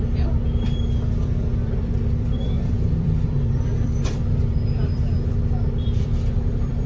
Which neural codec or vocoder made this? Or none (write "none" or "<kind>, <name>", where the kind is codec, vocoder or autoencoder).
vocoder, BigVGAN v2